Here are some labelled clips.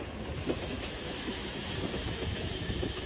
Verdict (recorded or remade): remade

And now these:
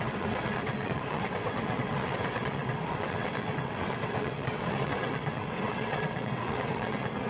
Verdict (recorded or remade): remade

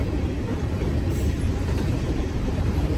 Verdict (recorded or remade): remade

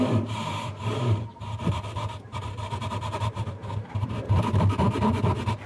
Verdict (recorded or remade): remade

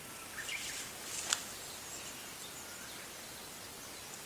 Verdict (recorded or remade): recorded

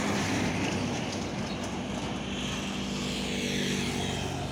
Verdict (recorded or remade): recorded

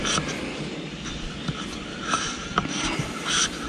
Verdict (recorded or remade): recorded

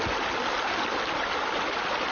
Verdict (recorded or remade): recorded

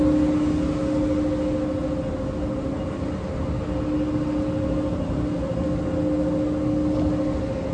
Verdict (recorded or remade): recorded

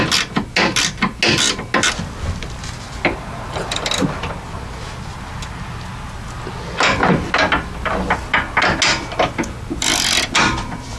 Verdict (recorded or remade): recorded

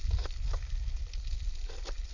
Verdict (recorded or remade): recorded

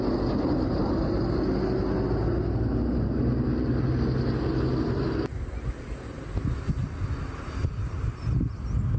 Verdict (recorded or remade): recorded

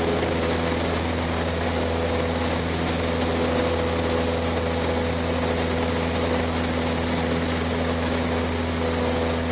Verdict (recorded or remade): recorded